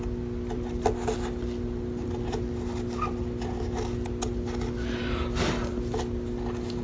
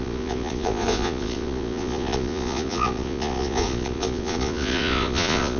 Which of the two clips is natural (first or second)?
first